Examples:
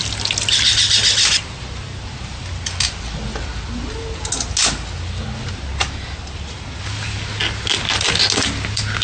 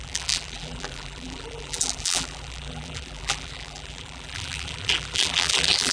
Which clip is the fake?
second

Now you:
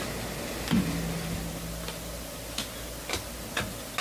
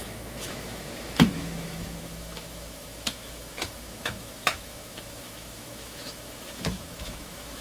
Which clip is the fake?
second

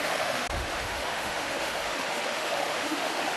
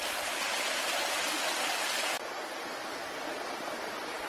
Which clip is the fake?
first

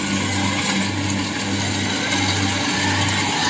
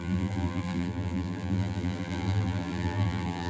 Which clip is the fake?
second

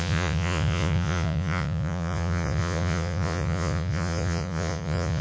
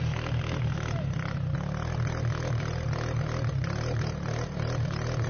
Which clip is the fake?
first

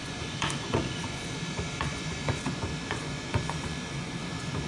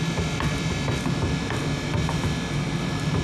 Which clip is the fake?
first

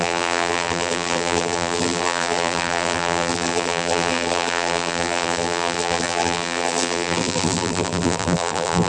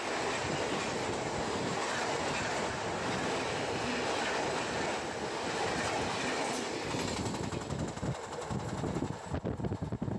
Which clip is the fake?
first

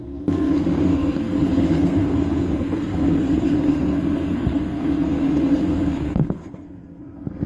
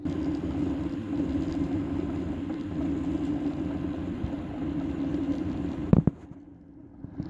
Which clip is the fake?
first